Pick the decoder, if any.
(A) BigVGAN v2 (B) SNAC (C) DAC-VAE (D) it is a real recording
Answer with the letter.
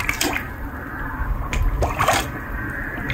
A